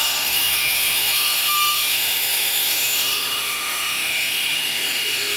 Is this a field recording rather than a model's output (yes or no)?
no